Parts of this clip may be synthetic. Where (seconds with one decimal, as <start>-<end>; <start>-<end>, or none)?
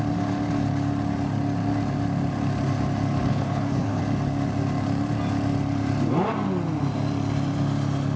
3.3-4.0